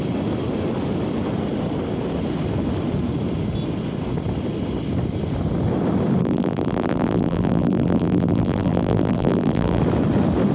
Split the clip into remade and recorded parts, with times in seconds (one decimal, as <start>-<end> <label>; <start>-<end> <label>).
0.0-6.2 recorded; 6.2-9.8 remade; 9.8-10.5 recorded

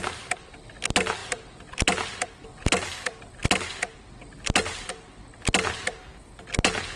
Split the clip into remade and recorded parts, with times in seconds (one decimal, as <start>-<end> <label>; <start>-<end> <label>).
0.0-7.0 recorded